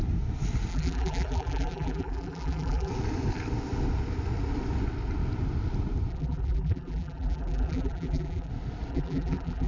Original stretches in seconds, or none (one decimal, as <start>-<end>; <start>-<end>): 0.0-0.7; 2.9-6.1; 8.5-8.9